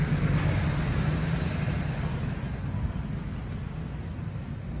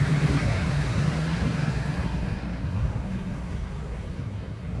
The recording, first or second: first